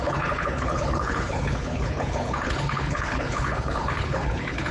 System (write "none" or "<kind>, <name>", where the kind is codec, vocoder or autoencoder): codec, HILCodec